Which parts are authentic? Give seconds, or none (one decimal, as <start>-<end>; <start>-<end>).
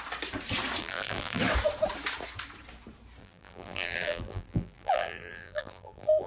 0.0-0.8; 1.4-3.2